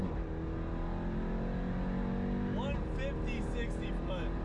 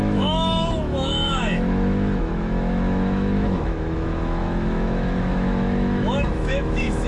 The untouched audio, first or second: first